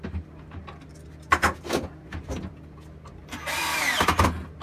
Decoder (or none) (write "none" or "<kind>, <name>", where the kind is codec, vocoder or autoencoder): none